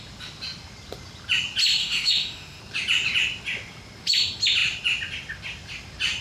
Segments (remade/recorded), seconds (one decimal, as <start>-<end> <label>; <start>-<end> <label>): 0.0-1.8 recorded; 1.8-2.6 remade; 2.6-6.2 recorded